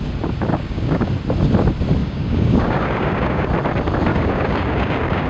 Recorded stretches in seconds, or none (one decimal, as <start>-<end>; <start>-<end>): 0.0-0.5; 1.1-2.0; 3.5-4.1